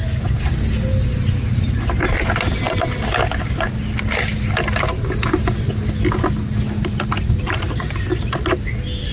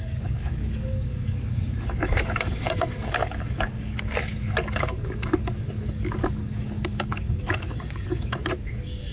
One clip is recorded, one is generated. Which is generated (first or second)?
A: second